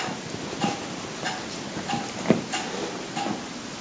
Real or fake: real